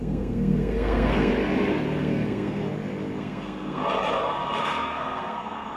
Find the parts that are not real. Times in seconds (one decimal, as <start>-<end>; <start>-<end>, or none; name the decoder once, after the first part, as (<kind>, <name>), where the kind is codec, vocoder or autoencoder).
0.0-1.3 (codec, SNAC); 2.0-2.6; 3.2-3.8; 4.6-5.8